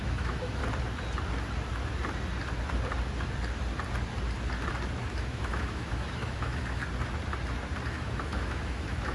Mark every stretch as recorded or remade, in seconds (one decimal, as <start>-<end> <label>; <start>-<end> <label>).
0.0-0.6 remade; 0.6-5.0 recorded; 5.0-6.8 remade; 6.8-7.9 recorded; 7.9-9.1 remade